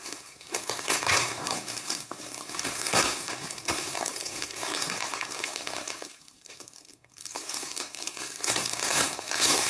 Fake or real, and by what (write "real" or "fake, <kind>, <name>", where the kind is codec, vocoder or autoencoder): fake, codec, SNAC